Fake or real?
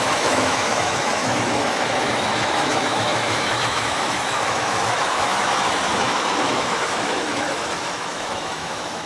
fake